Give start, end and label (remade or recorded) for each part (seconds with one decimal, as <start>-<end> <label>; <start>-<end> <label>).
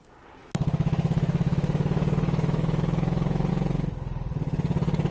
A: 0.0-0.4 recorded; 0.4-3.5 remade; 3.5-5.1 recorded